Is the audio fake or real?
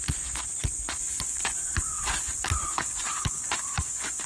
fake